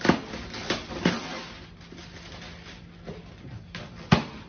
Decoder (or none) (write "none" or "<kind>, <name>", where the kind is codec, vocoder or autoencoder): none